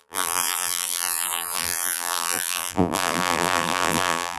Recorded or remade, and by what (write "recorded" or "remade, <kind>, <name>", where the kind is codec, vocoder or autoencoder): remade, vocoder, BigVGAN v2